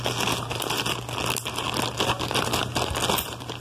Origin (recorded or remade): recorded